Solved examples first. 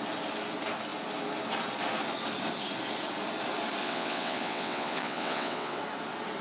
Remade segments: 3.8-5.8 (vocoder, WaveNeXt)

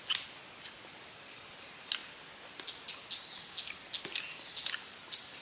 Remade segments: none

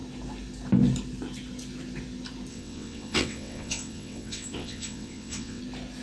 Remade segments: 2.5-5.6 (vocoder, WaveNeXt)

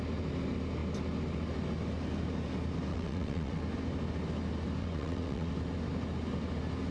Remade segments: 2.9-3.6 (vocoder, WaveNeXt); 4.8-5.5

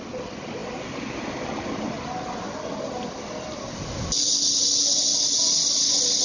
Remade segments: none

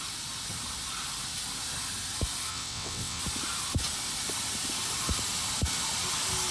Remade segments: 2.5-3.2 (vocoder, WaveNeXt)